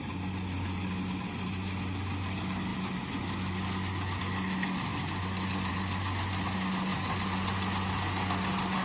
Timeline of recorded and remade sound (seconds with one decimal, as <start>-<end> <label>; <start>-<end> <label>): 0.0-8.8 recorded